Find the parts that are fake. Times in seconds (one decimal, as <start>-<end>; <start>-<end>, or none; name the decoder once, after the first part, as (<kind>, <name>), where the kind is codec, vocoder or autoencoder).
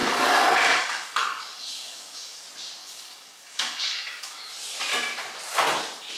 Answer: 0.0-2.4 (codec, DAC); 2.8-4.5